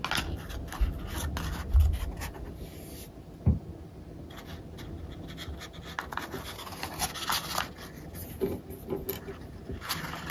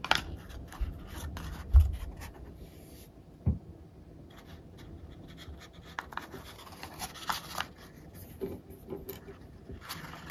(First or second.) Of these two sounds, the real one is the first